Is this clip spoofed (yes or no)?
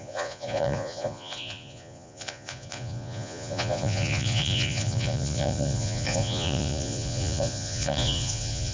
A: yes